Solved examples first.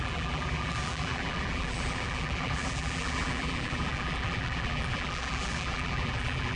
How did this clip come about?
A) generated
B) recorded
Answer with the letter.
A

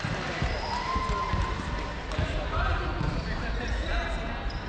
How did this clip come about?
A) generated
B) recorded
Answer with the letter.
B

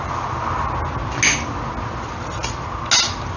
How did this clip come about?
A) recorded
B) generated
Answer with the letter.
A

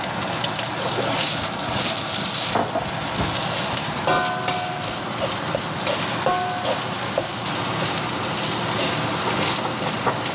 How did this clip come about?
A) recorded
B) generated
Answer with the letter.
A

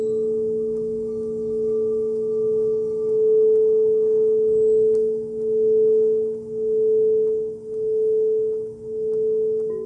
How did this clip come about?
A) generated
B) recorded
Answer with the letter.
B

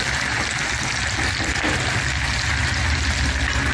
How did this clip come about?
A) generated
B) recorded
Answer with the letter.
B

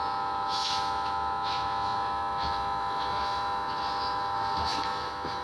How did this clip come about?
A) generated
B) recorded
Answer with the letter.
A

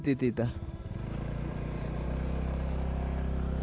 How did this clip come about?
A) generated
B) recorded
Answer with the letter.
A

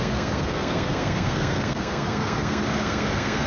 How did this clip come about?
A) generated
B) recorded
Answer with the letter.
A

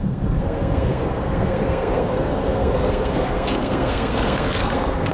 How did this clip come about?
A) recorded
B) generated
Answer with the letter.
B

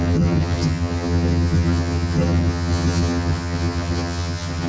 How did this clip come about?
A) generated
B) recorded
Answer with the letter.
A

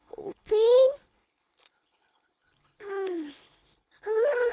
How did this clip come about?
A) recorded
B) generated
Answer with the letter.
B